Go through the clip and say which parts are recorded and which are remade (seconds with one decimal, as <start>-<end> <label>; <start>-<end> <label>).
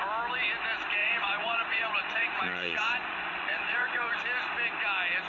0.0-1.0 recorded; 1.0-4.2 remade; 4.2-5.3 recorded